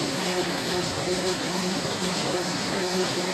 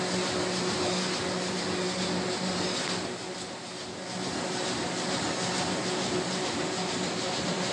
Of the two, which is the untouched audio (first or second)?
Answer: second